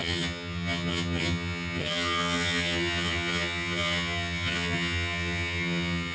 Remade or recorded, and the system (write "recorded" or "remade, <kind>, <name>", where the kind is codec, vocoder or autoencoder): remade, vocoder, HiFi-GAN